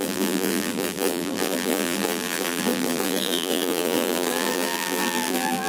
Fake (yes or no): yes